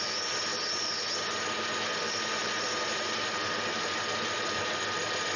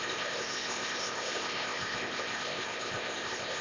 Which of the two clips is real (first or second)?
first